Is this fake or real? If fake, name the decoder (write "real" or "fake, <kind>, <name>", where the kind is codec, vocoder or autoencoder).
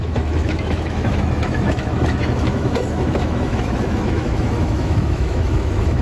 fake, autoencoder, DAC-VAE